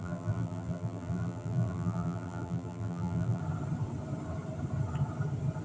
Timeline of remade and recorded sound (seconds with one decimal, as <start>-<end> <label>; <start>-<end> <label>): 0.0-3.4 remade; 3.4-5.6 recorded